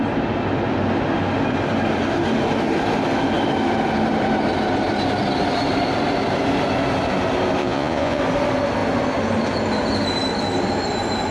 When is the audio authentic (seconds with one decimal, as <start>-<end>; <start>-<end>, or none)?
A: 0.0-7.6; 8.2-11.3